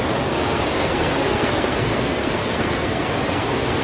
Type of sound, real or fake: fake